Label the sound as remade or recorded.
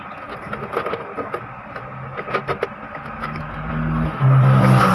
recorded